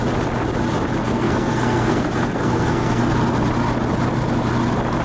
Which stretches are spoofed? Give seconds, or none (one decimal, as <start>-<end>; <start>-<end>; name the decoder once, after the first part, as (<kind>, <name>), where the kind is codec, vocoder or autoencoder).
1.0-3.0 (codec, SNAC)